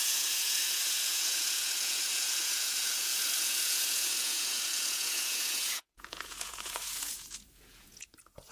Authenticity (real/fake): fake